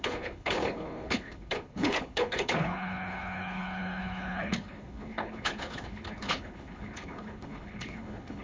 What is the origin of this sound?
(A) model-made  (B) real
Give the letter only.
A